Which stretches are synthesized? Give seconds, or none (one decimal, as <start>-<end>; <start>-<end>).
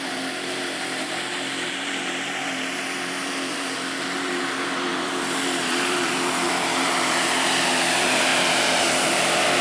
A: 0.0-9.6